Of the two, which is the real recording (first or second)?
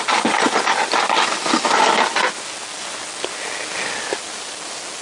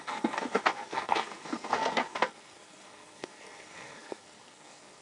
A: first